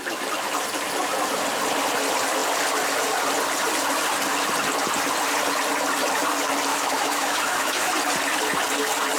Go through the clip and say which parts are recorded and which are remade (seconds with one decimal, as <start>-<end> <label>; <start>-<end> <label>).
0.0-6.7 recorded; 6.7-7.9 remade; 7.9-9.2 recorded